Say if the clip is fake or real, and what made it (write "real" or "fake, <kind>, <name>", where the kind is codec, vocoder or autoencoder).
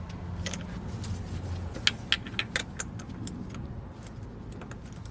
real